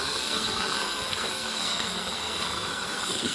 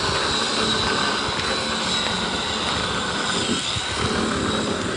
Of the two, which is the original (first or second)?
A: second